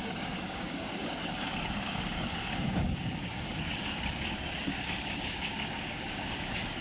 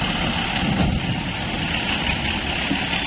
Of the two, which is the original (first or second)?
second